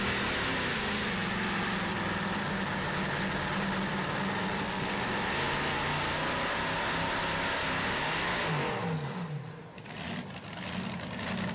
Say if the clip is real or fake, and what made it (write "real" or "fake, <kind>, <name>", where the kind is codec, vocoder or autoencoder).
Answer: real